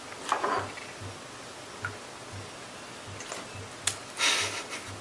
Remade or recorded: recorded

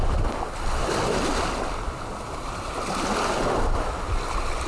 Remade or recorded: recorded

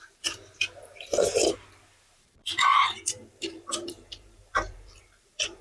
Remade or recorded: remade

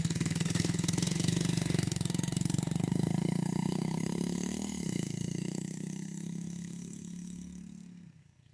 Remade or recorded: remade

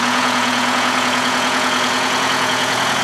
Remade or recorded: remade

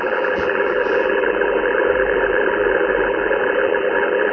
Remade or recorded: remade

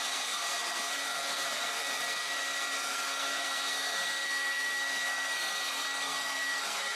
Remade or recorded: remade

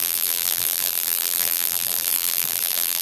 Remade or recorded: remade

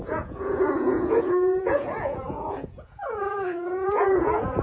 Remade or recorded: remade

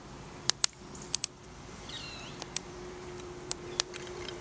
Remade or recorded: remade